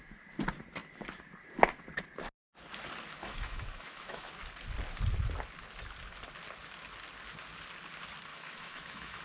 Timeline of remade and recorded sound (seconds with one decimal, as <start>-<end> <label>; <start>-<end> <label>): 0.0-3.2 recorded; 3.2-4.3 remade; 4.3-8.3 recorded; 8.3-9.2 remade